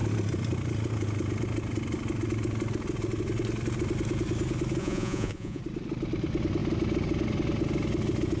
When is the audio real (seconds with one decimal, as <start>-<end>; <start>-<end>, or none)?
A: 0.0-4.8; 5.6-8.4